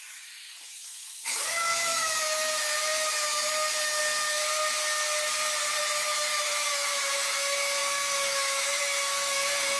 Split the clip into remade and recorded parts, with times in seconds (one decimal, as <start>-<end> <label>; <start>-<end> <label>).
0.0-4.4 remade; 4.4-5.8 recorded; 5.8-9.8 remade